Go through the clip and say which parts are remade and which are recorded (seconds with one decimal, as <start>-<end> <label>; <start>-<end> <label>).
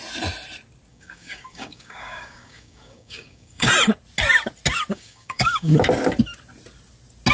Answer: 0.0-0.9 recorded; 0.9-3.7 remade; 3.7-4.9 recorded; 4.9-5.7 remade; 5.7-7.3 recorded